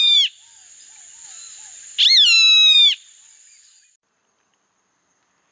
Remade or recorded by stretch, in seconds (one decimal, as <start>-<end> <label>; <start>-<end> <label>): 0.0-5.5 recorded